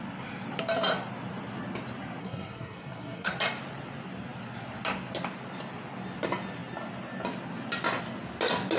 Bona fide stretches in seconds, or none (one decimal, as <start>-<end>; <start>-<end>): 0.0-2.2; 3.3-8.8